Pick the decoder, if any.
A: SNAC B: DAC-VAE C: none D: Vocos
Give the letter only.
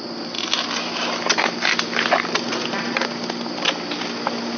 C